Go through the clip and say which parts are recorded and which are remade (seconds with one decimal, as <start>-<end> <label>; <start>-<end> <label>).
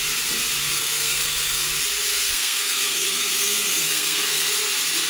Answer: 0.0-0.6 recorded; 0.6-1.7 remade; 1.7-2.1 recorded; 2.1-4.5 remade; 4.5-5.1 recorded